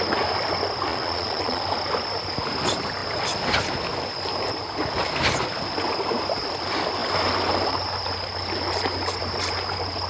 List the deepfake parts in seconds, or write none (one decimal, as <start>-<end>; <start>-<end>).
0.9-1.6